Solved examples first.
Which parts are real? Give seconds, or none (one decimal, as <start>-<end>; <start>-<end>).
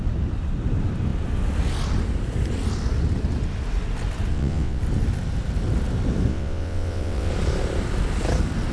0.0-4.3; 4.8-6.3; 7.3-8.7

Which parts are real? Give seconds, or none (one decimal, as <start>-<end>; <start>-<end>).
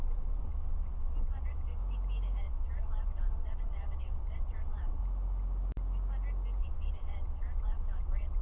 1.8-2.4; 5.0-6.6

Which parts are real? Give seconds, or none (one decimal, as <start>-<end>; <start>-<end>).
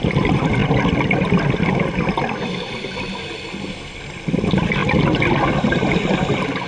0.0-6.7